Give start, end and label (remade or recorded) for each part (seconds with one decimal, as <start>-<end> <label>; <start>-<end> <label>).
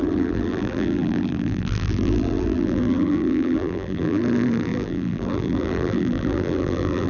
0.0-7.1 remade